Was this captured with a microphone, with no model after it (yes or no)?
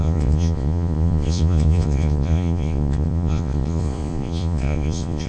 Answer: no